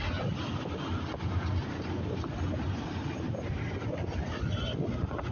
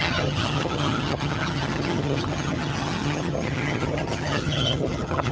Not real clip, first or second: second